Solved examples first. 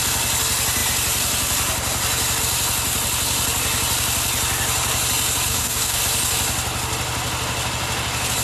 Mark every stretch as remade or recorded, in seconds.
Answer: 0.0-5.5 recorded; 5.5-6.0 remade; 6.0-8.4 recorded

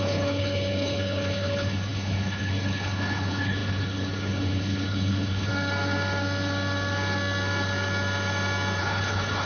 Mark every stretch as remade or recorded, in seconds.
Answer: 0.0-5.5 remade; 5.5-8.8 recorded; 8.8-9.5 remade

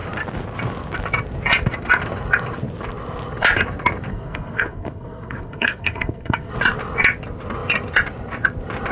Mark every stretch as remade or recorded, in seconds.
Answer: 0.0-4.1 recorded; 4.1-6.5 remade; 6.5-8.9 recorded